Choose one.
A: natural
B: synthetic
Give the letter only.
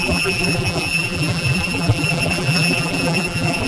B